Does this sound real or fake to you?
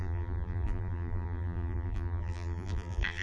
fake